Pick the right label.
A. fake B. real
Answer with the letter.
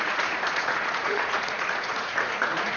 A